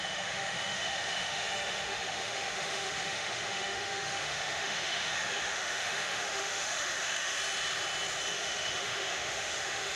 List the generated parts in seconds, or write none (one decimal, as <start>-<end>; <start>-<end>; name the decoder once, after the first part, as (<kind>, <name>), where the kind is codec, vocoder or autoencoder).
0.0-7.4 (autoencoder, DAC-VAE); 8.3-10.0